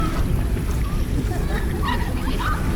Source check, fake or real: real